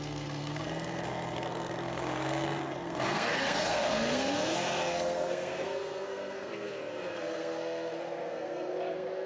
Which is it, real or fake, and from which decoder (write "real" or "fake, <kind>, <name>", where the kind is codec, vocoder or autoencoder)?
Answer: fake, codec, SNAC